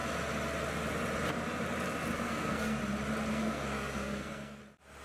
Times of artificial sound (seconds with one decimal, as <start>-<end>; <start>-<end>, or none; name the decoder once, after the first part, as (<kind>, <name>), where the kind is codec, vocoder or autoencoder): 2.1-2.8 (codec, SNAC); 3.3-4.6